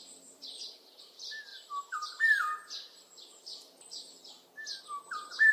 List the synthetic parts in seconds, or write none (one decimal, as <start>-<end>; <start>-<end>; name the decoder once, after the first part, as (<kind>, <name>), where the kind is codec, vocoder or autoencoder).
0.0-1.5 (vocoder, BigVGAN v2); 4.8-5.5